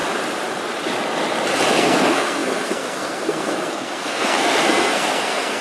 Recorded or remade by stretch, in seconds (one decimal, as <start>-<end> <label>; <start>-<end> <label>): 0.0-1.7 recorded; 1.7-5.6 remade

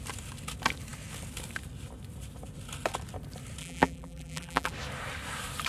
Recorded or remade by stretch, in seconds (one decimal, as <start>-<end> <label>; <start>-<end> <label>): 0.0-3.6 recorded; 3.6-4.7 remade; 4.7-5.7 recorded

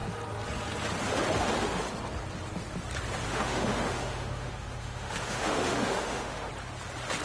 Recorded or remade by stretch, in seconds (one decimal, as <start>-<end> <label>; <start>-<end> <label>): 0.0-3.3 recorded; 3.3-6.5 remade; 6.5-7.2 recorded

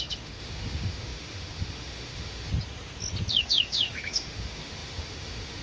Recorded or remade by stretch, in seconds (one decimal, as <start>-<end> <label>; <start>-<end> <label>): 0.0-2.5 remade; 2.5-3.3 recorded; 3.3-5.6 remade

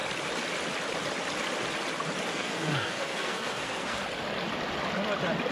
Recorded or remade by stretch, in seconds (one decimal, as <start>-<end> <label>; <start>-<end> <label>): 0.0-2.3 recorded; 2.3-4.0 remade; 4.0-5.5 recorded

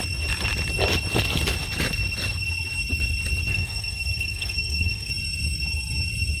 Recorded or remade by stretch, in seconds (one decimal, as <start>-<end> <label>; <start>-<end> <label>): 0.0-3.5 recorded; 3.5-5.1 remade; 5.1-6.4 recorded